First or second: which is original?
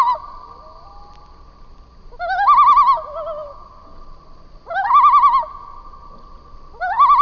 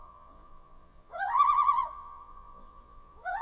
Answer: first